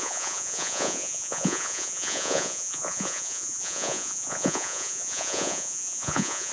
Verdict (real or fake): fake